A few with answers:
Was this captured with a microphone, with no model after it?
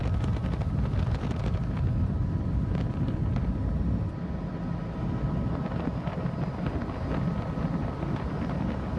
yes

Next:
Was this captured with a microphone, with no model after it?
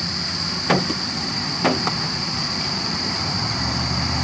yes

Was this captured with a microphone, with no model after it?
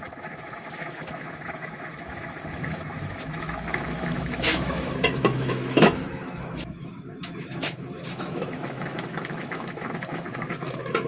no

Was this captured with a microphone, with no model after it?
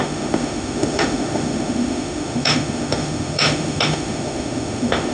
no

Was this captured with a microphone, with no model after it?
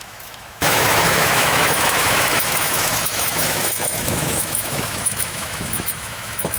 no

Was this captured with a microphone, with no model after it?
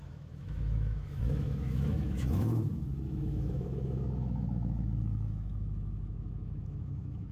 no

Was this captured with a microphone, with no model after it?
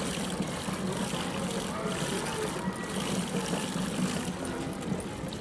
yes